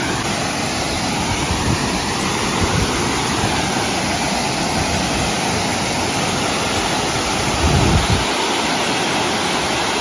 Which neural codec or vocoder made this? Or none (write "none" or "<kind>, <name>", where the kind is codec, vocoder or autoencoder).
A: none